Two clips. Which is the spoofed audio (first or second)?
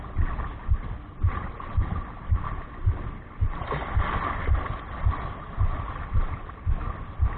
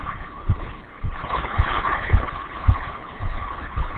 second